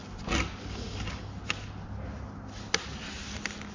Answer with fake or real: real